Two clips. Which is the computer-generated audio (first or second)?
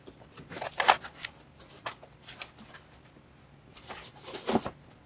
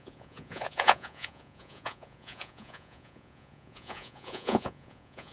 second